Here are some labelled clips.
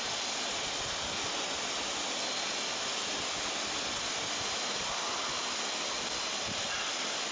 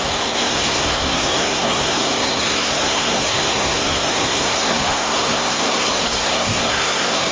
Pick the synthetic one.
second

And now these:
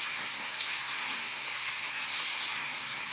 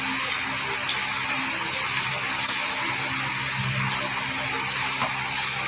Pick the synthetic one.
first